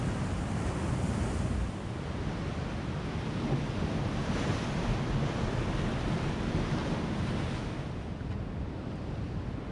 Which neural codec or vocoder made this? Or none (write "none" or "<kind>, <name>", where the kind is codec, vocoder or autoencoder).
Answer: none